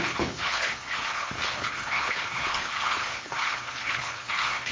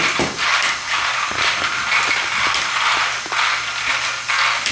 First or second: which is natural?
second